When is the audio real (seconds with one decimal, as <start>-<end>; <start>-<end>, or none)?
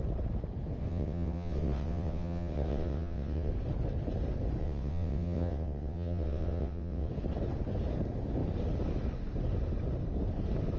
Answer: 0.0-0.9; 3.5-4.6; 7.1-10.8